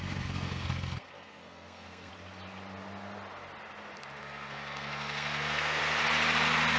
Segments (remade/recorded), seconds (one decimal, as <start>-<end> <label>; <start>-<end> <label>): 0.0-2.1 remade; 2.1-4.2 recorded; 4.2-5.8 remade; 5.8-6.8 recorded